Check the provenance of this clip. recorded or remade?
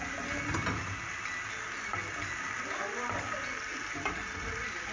recorded